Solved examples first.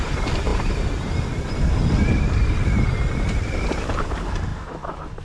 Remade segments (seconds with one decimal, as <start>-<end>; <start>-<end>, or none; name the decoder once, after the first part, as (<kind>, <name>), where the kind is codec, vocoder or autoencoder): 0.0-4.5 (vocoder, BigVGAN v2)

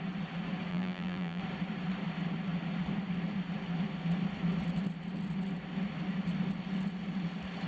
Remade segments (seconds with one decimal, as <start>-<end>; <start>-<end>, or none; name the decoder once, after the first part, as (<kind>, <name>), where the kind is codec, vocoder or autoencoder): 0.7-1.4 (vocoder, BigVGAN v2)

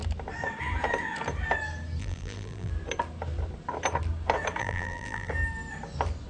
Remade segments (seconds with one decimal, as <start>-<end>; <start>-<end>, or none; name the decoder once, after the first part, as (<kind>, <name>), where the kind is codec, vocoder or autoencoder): 2.0-2.7 (vocoder, BigVGAN v2); 4.6-5.3